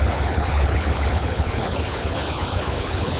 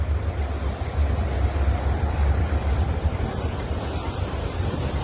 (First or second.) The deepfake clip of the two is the first